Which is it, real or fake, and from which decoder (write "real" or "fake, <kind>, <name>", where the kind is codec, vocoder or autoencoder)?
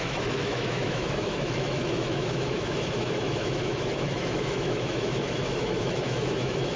fake, autoencoder, DAC-VAE